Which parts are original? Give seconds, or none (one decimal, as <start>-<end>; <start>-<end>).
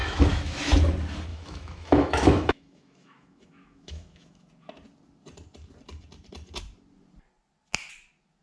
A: 0.6-1.3; 4.5-8.4